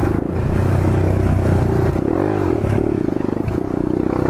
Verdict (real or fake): fake